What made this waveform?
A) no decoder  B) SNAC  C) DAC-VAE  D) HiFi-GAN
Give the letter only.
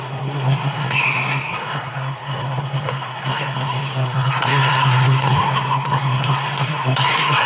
B